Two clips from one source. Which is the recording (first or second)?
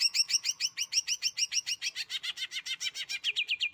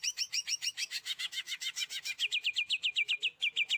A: first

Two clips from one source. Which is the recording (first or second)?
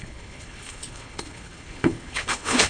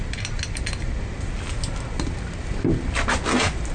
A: second